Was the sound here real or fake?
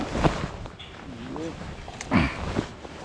real